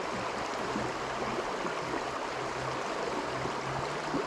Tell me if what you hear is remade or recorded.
recorded